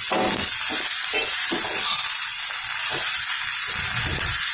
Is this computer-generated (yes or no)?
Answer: no